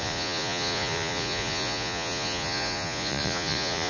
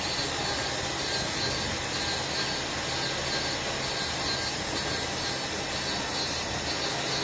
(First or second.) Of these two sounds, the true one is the second